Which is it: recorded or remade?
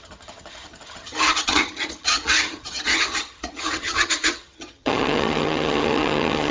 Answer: remade